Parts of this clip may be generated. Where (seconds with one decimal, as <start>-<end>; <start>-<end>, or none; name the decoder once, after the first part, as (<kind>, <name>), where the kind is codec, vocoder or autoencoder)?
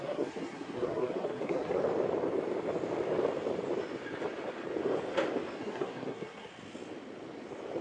0.0-1.8 (codec, SNAC); 5.6-6.5